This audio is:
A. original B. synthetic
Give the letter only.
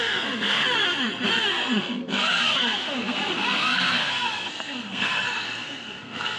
B